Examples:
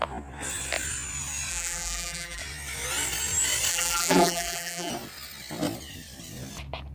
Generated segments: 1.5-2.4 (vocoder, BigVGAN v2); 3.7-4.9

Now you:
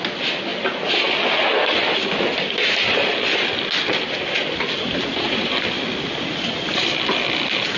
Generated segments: none

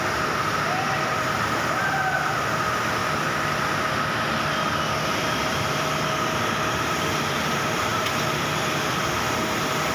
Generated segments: 0.0-3.0 (vocoder, BigVGAN v2); 5.2-9.9

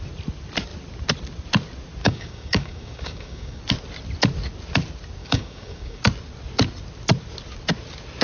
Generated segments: 2.0-3.6 (codec, DAC); 5.2-6.0